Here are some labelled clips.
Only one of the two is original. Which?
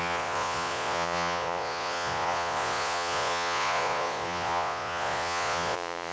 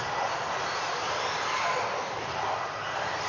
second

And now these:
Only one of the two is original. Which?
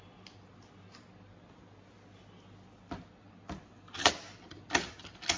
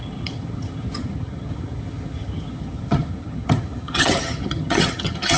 first